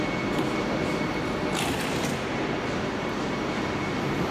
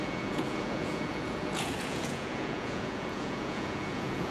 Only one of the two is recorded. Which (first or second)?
first